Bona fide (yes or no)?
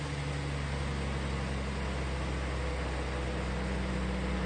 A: yes